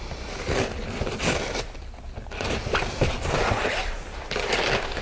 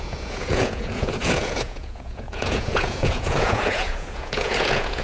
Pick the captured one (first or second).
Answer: first